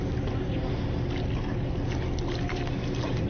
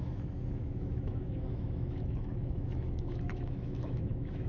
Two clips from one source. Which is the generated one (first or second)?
second